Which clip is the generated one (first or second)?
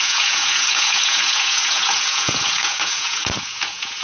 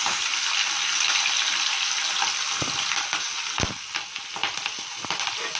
first